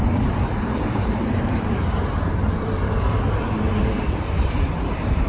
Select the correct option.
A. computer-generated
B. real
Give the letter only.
A